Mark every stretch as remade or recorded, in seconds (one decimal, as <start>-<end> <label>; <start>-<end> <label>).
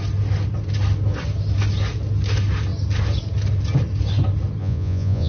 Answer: 0.0-4.6 recorded; 4.6-5.3 remade